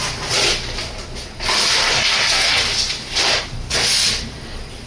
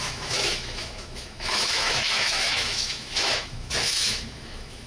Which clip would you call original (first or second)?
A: first